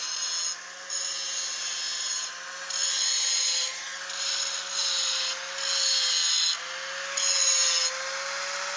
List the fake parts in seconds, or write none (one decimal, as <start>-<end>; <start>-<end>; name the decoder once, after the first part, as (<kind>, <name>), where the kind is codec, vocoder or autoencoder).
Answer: none

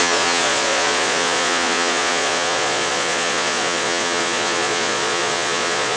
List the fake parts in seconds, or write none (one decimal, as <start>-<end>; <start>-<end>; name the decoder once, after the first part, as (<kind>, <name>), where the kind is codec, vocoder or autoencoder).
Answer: 0.0-6.0 (vocoder, Vocos)

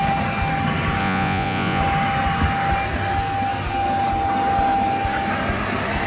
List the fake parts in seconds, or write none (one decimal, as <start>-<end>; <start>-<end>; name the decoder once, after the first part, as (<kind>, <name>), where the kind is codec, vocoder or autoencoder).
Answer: 1.0-1.8 (vocoder, Vocos)

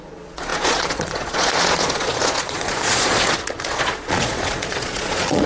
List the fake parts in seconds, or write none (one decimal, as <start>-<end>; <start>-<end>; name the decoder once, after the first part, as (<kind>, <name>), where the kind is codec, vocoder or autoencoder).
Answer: 0.0-5.5 (vocoder, Vocos)

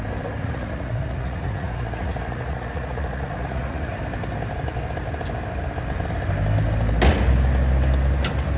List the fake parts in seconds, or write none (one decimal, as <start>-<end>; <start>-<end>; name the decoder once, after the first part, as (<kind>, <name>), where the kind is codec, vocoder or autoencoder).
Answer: 0.4-4.0 (vocoder, Vocos)

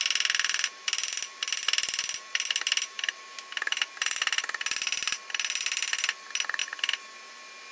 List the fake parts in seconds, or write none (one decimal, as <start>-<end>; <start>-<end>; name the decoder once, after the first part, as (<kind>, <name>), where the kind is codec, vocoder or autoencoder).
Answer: none